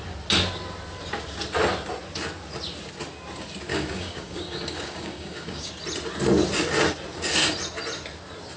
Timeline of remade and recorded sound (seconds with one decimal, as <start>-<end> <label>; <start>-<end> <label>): 0.0-3.7 recorded; 3.7-5.7 remade; 5.7-8.6 recorded